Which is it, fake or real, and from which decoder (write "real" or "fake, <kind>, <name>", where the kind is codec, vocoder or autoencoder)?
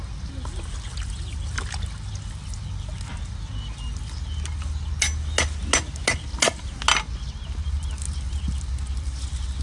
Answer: real